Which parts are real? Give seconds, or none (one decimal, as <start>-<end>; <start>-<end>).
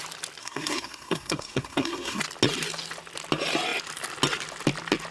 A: 0.0-0.4; 2.2-5.1